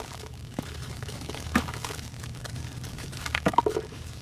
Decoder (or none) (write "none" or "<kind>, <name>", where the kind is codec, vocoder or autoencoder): codec, DAC